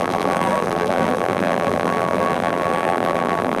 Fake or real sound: fake